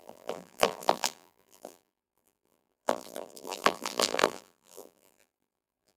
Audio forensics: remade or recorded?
remade